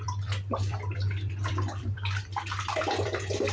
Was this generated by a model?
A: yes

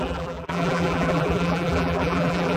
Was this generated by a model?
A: yes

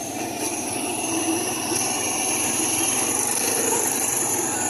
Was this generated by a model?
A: yes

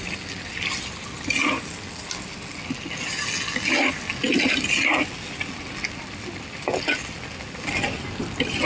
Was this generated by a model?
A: no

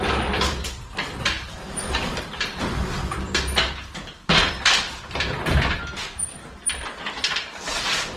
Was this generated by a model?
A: yes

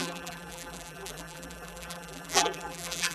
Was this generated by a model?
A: yes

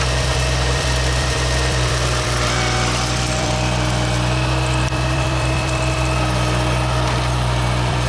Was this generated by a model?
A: yes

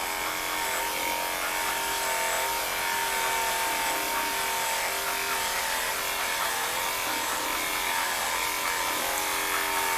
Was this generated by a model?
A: no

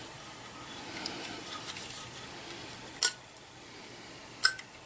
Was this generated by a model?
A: yes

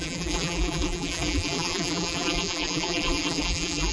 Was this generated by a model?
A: yes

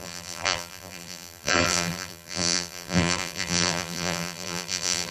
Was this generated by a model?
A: yes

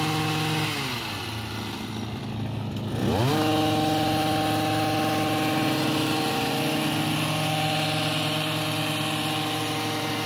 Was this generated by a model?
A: no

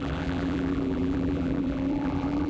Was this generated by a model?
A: yes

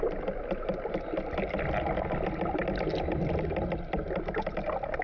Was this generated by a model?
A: no